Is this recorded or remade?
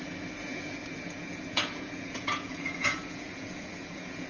remade